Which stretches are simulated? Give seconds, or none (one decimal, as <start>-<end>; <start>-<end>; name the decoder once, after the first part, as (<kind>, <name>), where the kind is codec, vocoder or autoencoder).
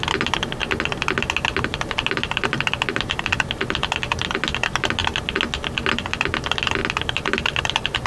0.6-1.2 (vocoder, BigVGAN v2); 1.7-3.5; 6.8-8.1